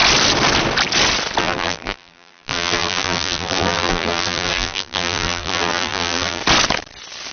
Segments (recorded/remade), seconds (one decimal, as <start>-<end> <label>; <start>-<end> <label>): 0.0-1.4 recorded; 1.4-6.4 remade; 6.4-7.3 recorded